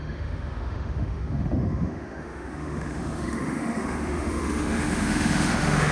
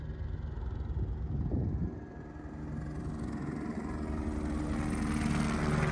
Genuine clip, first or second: second